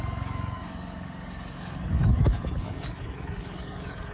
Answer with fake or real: fake